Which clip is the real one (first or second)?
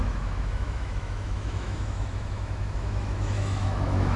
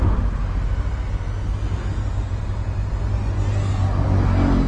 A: second